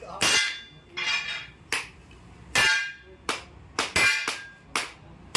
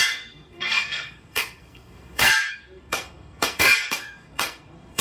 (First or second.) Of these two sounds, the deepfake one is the second